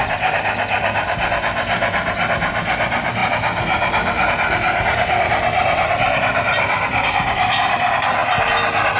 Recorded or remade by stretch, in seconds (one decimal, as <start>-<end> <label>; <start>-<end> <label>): 0.0-3.2 recorded; 3.2-7.5 remade; 7.5-9.0 recorded